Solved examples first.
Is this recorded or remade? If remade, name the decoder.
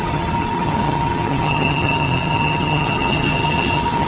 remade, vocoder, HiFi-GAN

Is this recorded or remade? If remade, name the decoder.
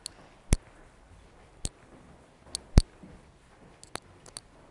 recorded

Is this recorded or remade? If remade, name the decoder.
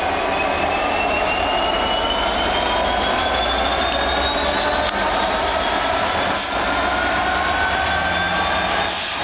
recorded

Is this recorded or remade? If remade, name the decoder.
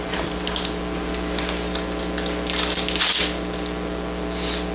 recorded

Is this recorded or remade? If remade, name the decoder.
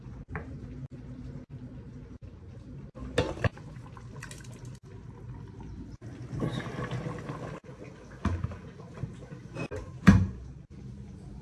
recorded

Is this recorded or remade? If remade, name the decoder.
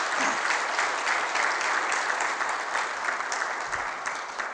recorded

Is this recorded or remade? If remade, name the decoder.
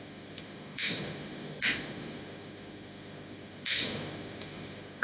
remade, autoencoder, DAC-VAE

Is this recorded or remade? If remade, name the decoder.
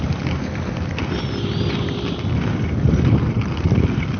recorded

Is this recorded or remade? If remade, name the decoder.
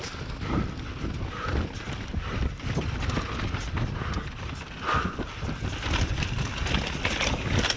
recorded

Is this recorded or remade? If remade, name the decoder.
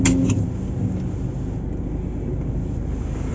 recorded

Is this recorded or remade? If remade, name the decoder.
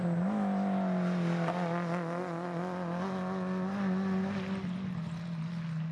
recorded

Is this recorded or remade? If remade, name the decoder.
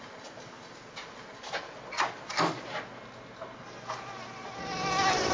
recorded